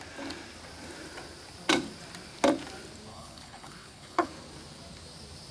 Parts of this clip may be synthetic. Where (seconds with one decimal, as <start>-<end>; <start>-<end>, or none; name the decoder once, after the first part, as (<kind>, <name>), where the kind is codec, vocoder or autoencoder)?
3.1-4.3 (codec, HILCodec)